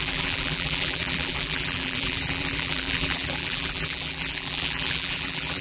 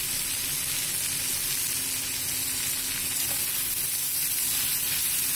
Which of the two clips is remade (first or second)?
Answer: first